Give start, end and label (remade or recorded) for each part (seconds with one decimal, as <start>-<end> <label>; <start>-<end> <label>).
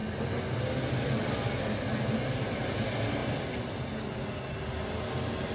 0.0-5.5 recorded